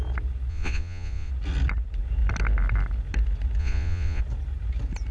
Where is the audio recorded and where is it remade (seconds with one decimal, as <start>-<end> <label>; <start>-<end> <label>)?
0.0-0.5 recorded; 0.5-1.3 remade; 1.3-3.6 recorded; 3.6-4.2 remade; 4.2-5.1 recorded